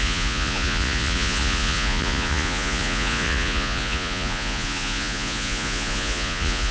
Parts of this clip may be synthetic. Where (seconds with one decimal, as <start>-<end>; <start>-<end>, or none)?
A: 0.0-6.7